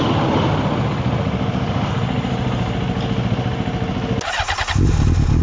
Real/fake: real